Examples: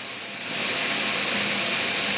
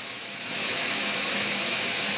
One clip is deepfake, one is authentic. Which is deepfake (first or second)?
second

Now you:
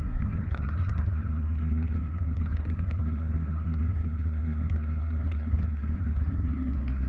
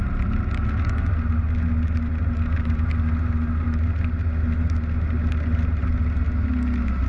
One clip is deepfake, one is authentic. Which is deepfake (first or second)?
first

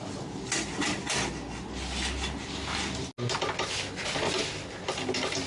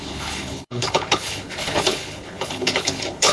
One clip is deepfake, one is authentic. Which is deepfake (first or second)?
second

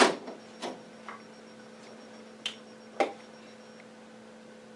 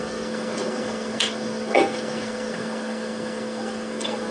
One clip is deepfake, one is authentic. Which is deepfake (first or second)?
second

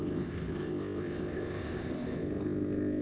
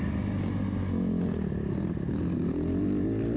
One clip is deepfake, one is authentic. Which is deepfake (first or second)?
first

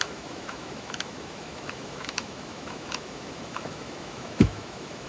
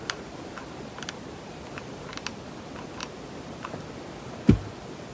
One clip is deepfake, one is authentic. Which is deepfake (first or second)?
first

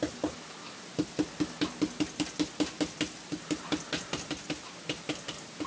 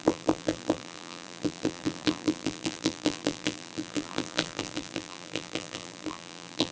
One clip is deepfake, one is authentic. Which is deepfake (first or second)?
second